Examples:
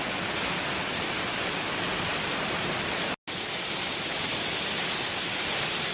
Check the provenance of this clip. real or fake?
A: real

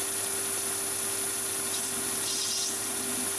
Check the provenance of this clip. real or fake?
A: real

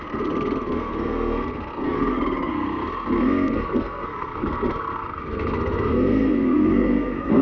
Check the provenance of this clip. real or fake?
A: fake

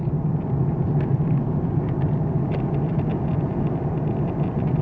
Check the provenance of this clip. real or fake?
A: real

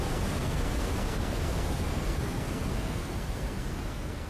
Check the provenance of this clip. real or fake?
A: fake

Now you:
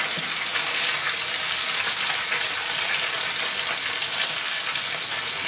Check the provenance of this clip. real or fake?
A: real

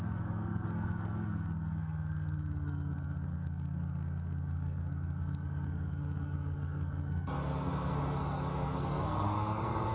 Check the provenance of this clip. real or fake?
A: fake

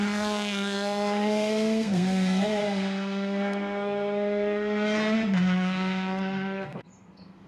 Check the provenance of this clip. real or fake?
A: fake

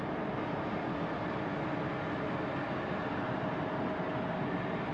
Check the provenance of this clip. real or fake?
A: real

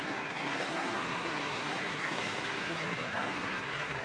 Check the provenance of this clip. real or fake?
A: fake